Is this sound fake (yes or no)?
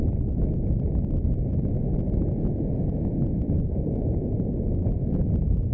no